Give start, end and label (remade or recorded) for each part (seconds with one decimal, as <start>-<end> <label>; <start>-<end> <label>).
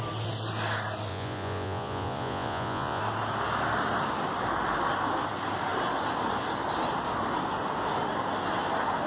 0.0-1.1 recorded; 1.1-3.0 remade; 3.0-9.1 recorded